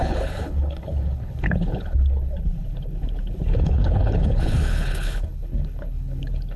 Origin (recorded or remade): remade